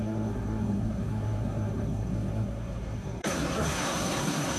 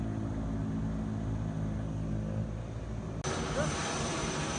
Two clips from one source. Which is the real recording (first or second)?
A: second